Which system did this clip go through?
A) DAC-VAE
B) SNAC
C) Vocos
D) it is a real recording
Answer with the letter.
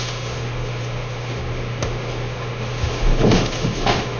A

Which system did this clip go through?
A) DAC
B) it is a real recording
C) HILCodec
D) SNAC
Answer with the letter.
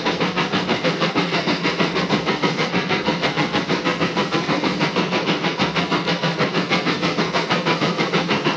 D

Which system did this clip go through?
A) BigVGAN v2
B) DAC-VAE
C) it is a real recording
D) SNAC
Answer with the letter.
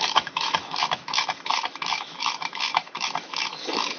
B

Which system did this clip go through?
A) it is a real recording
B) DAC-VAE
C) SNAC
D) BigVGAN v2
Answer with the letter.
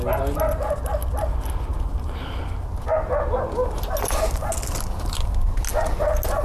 A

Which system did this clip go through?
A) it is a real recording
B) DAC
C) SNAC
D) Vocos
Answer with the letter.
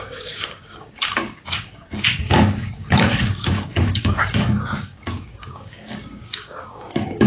B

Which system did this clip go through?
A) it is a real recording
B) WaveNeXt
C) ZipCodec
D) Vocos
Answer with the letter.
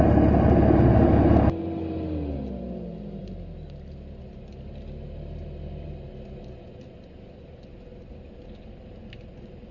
A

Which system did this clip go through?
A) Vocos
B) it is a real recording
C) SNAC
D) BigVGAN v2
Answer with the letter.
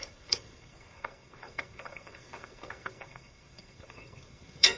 C